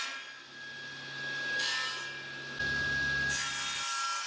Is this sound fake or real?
real